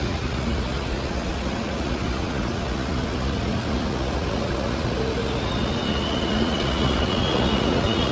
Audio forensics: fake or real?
fake